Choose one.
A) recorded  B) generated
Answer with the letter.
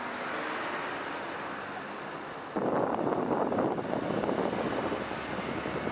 A